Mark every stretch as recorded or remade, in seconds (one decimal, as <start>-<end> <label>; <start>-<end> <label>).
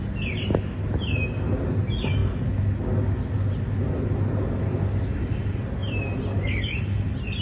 0.0-7.4 recorded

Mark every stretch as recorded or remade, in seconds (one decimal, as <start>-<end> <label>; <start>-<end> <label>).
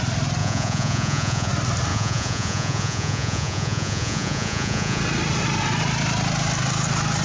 0.0-0.4 recorded; 0.4-1.5 remade; 1.5-1.9 recorded; 1.9-5.0 remade; 5.0-7.2 recorded